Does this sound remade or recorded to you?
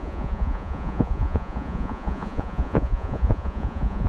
remade